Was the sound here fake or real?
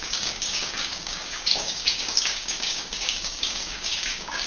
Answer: fake